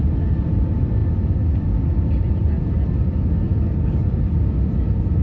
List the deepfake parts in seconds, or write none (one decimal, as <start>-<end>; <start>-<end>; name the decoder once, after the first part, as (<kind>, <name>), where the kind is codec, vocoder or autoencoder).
3.5-4.0 (codec, DAC)